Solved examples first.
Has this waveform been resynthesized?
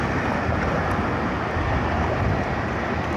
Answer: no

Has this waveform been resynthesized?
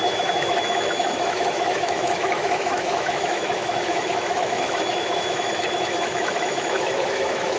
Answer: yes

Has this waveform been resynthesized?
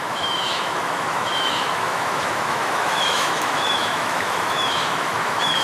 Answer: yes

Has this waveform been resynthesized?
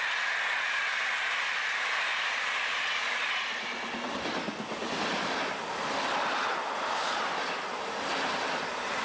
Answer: no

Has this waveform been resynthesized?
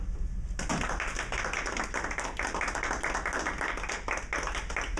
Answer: no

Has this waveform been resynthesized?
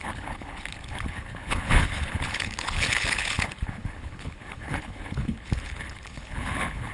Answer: yes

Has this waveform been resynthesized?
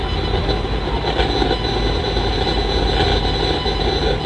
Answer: no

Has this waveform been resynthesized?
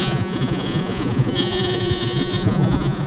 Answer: yes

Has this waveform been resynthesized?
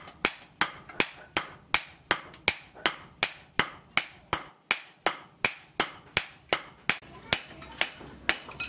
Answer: no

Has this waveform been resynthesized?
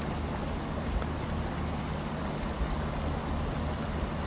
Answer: no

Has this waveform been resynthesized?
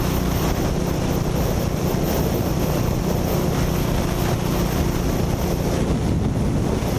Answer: no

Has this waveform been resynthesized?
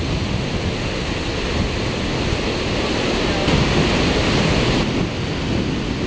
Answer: no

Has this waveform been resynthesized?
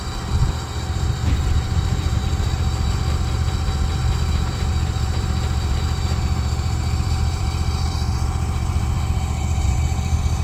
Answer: yes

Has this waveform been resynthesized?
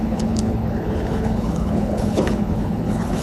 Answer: yes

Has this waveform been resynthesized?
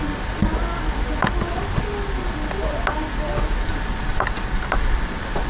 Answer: no